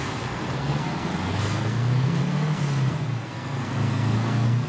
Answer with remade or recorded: remade